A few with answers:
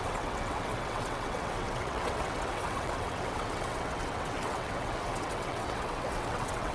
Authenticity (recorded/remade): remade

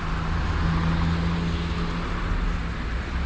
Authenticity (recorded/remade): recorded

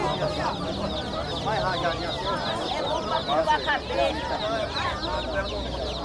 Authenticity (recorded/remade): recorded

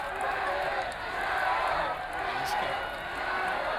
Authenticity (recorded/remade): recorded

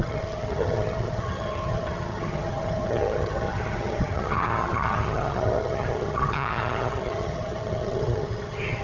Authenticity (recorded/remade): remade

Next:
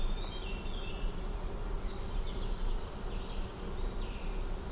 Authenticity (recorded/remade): recorded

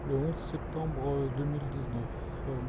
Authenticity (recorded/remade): recorded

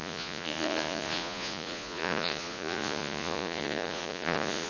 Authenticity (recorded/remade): remade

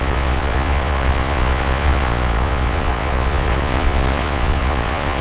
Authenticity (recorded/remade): remade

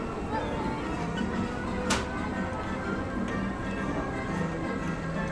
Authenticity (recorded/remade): recorded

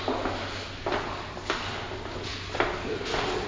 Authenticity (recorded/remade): recorded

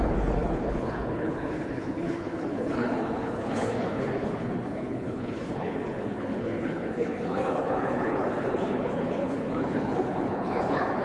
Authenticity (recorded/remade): remade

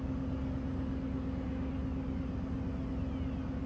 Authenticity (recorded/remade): recorded